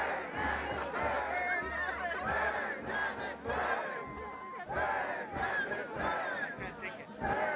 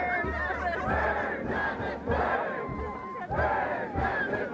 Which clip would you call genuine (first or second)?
first